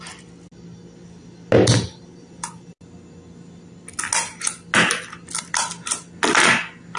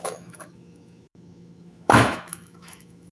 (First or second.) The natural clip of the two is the first